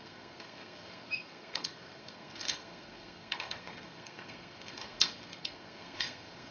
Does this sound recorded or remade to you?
remade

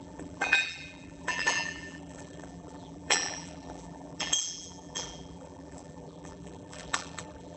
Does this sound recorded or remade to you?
remade